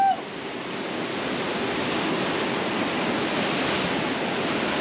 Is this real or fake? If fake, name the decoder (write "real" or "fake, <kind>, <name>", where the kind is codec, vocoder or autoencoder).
real